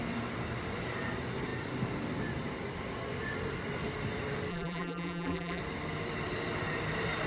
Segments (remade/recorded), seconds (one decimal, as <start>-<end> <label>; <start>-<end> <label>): 0.0-4.5 recorded; 4.5-5.6 remade; 5.6-7.3 recorded